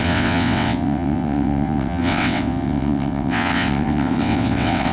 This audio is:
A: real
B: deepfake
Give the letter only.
B